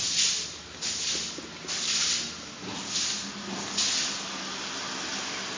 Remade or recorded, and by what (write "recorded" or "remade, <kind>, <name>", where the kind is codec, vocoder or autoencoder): recorded